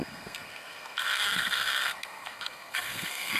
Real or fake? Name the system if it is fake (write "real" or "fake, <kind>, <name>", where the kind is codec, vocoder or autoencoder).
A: fake, codec, SNAC